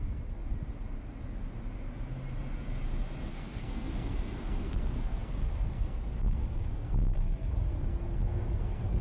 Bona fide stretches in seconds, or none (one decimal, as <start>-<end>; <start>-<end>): 0.4-3.3